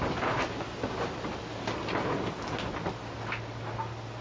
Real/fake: real